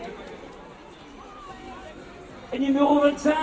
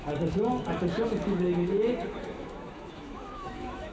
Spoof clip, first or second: second